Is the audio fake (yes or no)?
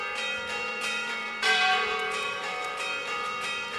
yes